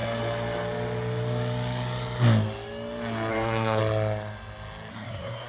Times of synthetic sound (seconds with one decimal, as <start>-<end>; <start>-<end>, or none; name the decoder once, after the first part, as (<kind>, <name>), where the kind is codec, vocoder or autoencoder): 3.3-3.8 (codec, SNAC); 4.9-5.5